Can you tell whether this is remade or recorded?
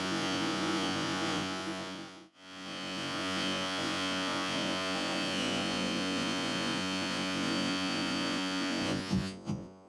remade